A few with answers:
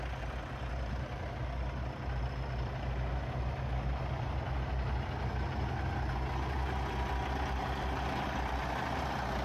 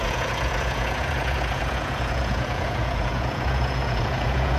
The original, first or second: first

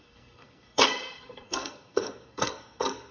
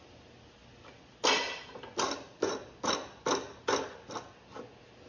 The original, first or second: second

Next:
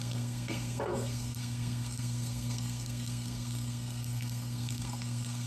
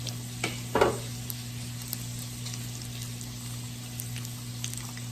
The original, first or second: second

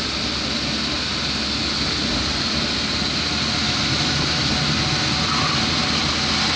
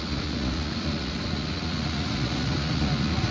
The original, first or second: first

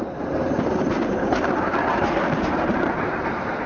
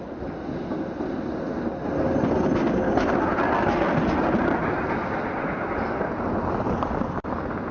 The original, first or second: second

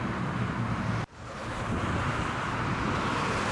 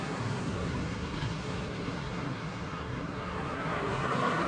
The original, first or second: first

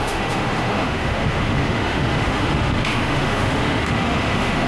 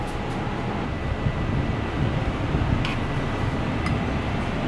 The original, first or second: second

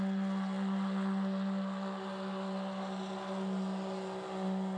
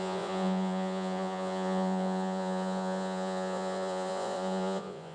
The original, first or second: first